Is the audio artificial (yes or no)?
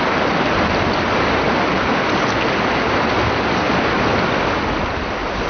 no